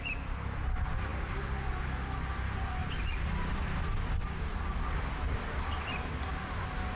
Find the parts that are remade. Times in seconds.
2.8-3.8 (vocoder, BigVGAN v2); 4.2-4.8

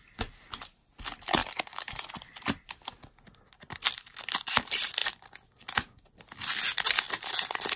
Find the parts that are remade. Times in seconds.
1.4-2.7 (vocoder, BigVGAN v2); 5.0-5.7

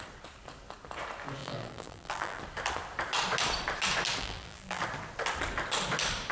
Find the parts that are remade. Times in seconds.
1.4-2.4 (vocoder, BigVGAN v2); 4.2-4.8